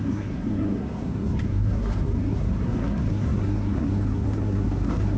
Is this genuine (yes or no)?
no